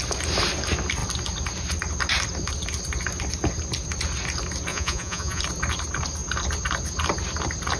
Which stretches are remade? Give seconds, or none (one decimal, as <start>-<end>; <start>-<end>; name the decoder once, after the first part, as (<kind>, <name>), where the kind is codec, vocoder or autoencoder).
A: 4.7-5.4 (vocoder, Vocos)